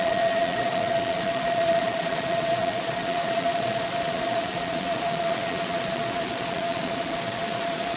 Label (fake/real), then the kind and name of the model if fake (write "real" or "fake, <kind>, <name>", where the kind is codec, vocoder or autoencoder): fake, vocoder, Vocos